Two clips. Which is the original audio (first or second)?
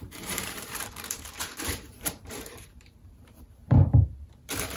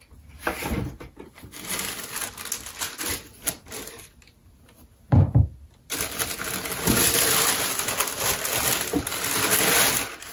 second